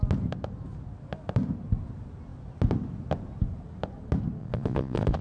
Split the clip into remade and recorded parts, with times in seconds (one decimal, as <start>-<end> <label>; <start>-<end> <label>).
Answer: 0.0-4.4 recorded; 4.4-5.2 remade

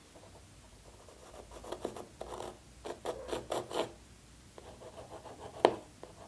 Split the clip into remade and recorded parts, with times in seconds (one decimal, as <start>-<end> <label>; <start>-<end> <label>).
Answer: 0.0-6.3 recorded

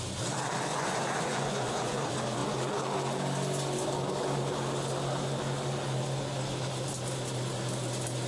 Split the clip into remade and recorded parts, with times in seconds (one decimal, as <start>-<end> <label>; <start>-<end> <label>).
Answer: 0.0-0.7 recorded; 0.7-2.0 remade; 2.0-8.3 recorded